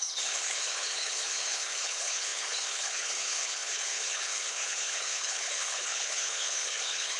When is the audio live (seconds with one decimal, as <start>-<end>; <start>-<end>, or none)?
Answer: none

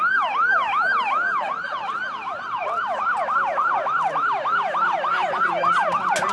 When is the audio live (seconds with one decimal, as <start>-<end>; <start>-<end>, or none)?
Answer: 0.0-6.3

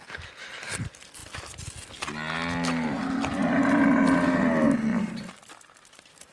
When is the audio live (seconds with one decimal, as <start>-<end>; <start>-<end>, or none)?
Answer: 0.0-6.3

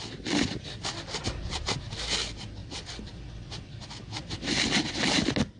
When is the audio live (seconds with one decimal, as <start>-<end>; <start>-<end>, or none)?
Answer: 0.0-5.6

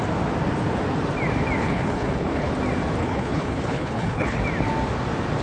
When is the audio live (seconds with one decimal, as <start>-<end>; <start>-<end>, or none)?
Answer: 0.0-1.6; 2.5-3.0; 4.4-5.4

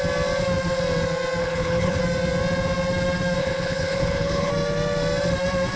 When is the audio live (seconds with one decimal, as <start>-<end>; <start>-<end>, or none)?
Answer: 0.0-1.4; 2.0-3.4; 4.5-5.8

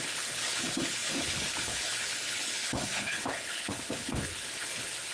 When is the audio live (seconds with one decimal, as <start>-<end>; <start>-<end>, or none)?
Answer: none